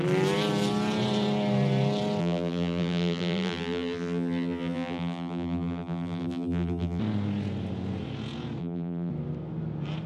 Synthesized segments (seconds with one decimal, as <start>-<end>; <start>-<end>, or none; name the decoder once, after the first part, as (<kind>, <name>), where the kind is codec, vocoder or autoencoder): 2.2-7.0 (vocoder, BigVGAN v2); 8.6-9.1